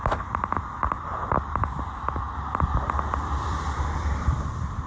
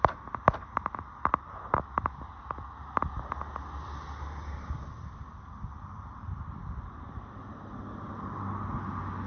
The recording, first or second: second